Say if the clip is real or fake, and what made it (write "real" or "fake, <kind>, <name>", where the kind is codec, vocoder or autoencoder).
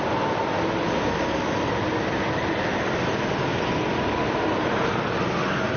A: real